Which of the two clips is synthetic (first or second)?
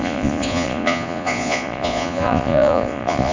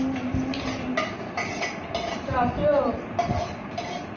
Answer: first